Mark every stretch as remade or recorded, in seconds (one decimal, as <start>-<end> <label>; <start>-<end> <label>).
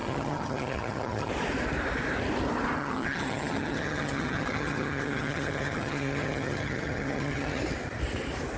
0.0-1.3 remade; 1.3-2.8 recorded; 2.8-7.6 remade; 7.6-8.6 recorded